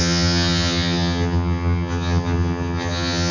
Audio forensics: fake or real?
fake